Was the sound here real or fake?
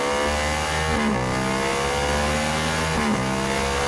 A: real